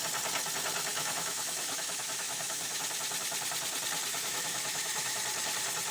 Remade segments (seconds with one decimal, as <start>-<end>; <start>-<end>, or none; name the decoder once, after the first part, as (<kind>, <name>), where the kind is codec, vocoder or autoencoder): 0.9-2.8 (autoencoder, DAC-VAE); 4.1-5.2